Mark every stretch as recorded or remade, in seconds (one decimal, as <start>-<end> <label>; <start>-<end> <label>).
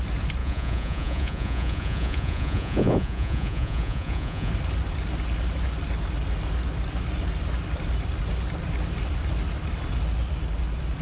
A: 0.0-0.4 recorded; 0.4-4.5 remade; 4.5-11.0 recorded